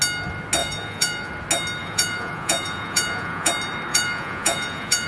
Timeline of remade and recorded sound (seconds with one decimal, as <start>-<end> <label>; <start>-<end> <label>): 0.0-0.6 recorded; 0.6-1.3 remade; 1.3-1.8 recorded; 1.8-3.5 remade; 3.5-3.9 recorded; 3.9-5.1 remade